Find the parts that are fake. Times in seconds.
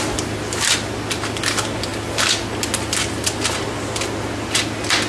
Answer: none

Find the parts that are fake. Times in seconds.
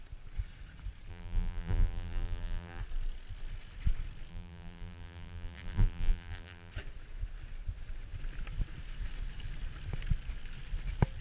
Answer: 1.1-2.8 (vocoder, BigVGAN v2); 4.3-6.7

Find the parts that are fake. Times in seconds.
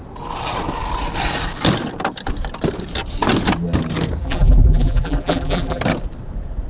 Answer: 4.2-5.8 (vocoder, BigVGAN v2)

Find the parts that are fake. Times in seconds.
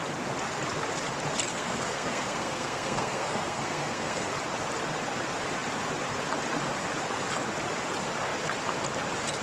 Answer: 1.5-4.3 (codec, SNAC)